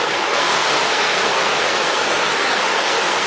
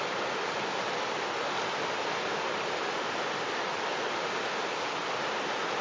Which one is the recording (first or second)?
second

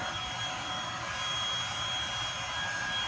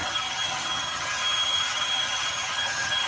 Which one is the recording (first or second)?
first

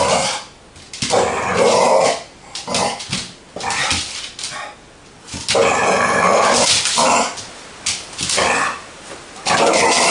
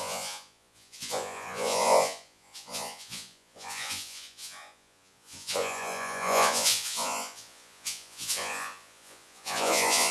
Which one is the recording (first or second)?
first